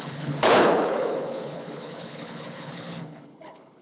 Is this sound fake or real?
fake